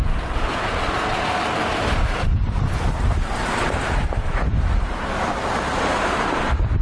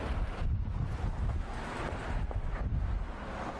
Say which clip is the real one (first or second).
second